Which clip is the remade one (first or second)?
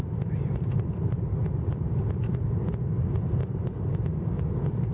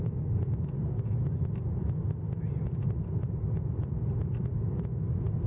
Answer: first